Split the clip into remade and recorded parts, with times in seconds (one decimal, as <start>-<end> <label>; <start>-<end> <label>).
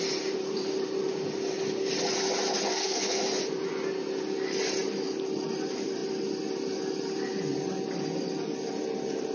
0.0-2.7 recorded; 2.7-3.2 remade; 3.2-9.3 recorded